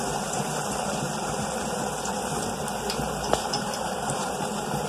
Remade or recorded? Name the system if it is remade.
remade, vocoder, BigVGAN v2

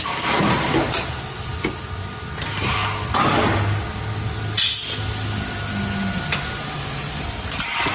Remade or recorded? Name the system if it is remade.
recorded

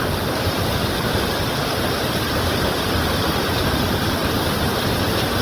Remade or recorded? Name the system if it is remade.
recorded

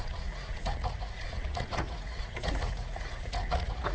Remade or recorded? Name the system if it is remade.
remade, vocoder, Vocos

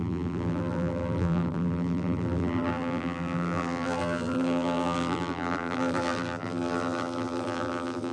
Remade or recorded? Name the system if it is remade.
remade, vocoder, BigVGAN v2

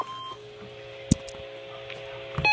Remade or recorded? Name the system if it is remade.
recorded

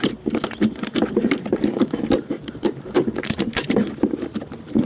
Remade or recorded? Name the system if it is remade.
remade, vocoder, BigVGAN v2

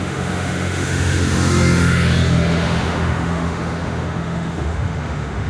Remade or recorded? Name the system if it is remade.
remade, autoencoder, DAC-VAE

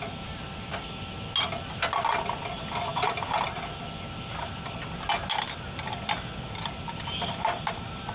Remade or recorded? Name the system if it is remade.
recorded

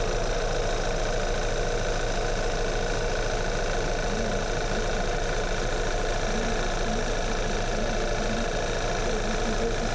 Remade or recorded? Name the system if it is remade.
recorded